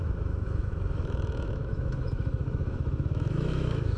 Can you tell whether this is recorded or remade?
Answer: remade